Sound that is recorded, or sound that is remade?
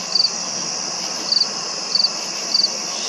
recorded